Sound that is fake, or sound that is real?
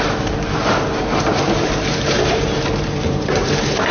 fake